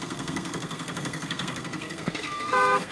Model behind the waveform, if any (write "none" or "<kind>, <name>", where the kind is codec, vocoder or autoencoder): codec, SNAC